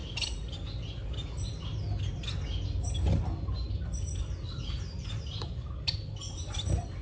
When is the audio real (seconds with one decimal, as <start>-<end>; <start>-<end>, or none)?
0.0-7.0